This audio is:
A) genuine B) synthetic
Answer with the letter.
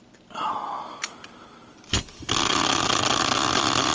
A